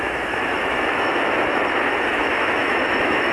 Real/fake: fake